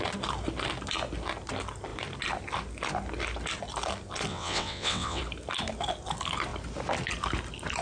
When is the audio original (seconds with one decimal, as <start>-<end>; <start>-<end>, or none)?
0.0-4.3; 5.2-7.8